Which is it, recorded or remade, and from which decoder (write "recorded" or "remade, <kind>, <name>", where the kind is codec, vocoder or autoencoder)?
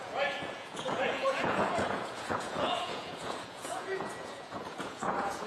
remade, vocoder, Vocos